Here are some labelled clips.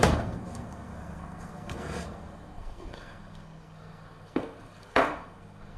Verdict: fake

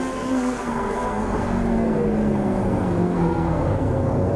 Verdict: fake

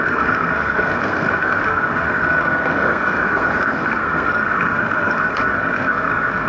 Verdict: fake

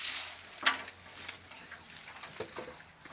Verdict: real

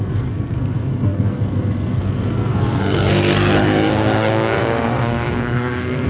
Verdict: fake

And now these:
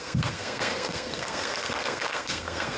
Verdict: fake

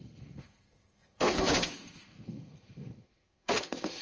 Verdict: fake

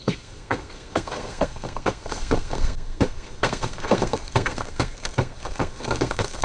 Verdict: fake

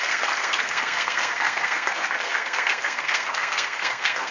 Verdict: fake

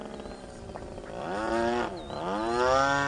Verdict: real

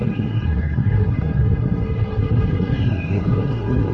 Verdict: fake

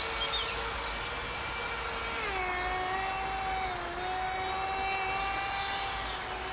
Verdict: real